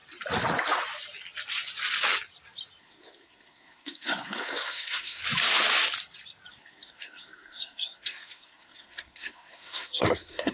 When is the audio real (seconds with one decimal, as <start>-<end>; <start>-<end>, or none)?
0.0-2.8; 5.2-6.5